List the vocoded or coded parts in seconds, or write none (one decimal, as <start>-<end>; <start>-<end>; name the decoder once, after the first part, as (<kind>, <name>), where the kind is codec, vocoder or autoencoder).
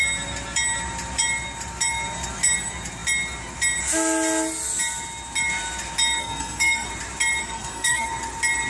6.2-6.9 (codec, SNAC); 7.4-8.1